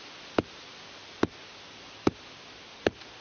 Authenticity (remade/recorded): recorded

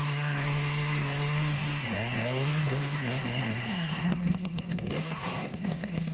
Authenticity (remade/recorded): remade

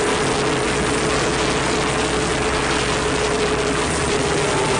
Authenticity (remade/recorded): recorded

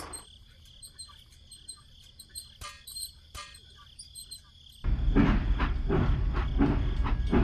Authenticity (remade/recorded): recorded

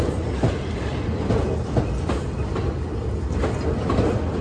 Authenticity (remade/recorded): recorded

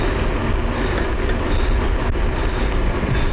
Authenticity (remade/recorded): recorded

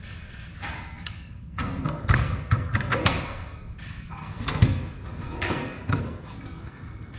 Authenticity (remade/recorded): remade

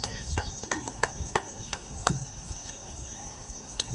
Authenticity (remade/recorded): remade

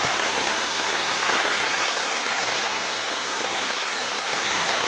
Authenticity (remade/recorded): remade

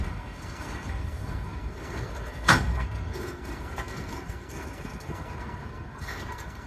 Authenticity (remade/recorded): remade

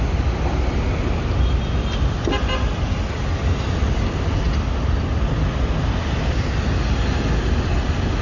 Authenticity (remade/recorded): recorded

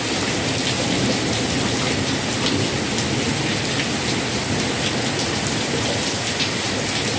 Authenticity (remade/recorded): recorded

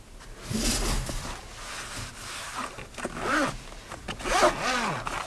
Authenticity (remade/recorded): recorded